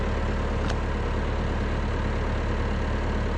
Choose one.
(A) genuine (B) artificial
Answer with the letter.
A